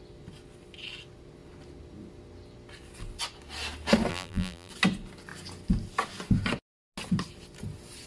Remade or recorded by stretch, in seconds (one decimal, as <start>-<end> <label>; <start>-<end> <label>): 0.0-4.1 recorded; 4.1-4.7 remade; 4.7-8.1 recorded